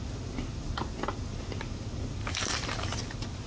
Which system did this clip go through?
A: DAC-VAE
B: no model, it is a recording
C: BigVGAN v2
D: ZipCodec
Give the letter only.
B